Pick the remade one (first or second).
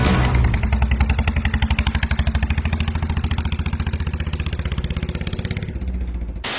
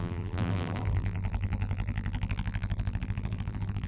second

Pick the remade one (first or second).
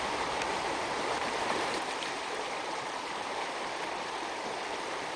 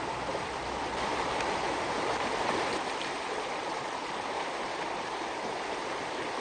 first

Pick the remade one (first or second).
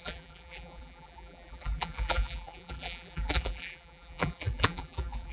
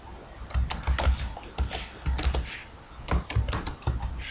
first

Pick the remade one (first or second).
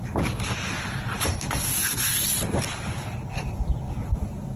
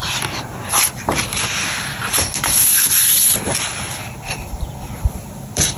second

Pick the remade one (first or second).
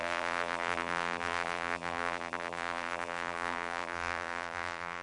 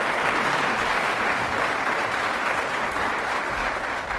first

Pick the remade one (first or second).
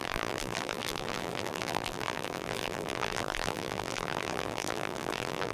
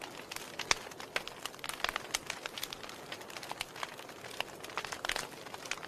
first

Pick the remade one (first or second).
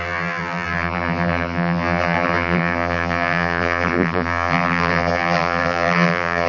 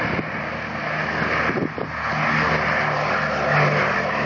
first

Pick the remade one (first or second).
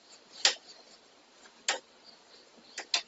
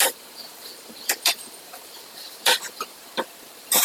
second